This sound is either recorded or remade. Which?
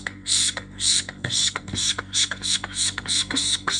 remade